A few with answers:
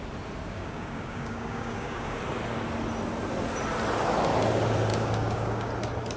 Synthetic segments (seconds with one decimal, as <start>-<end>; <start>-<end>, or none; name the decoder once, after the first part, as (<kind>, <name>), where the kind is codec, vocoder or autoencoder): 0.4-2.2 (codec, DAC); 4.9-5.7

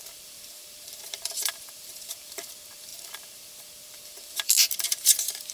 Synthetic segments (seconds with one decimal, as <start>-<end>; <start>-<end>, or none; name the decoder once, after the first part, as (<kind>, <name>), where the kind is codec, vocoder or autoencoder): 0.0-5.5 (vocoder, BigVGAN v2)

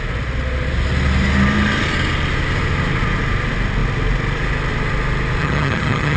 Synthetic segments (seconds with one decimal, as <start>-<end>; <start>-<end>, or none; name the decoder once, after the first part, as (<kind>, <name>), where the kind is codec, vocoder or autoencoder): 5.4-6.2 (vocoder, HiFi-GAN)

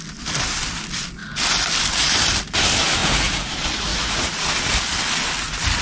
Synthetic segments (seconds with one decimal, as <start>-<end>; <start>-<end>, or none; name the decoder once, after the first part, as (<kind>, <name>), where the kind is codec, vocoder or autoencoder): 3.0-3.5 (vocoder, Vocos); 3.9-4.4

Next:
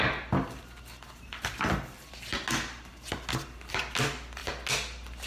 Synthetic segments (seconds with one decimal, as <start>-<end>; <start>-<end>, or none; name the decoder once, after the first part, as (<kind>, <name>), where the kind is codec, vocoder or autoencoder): none

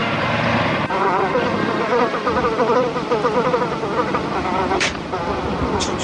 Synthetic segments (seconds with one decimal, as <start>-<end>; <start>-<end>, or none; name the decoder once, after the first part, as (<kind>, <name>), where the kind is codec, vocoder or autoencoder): 0.0-6.0 (vocoder, BigVGAN v2)